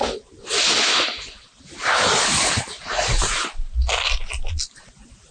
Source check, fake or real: real